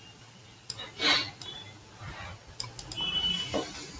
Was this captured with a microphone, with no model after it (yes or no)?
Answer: yes